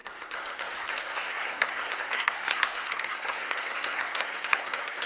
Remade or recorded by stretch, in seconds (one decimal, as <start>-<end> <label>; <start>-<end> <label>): 0.0-5.1 remade